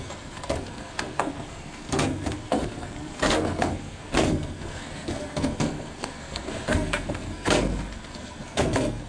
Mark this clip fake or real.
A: fake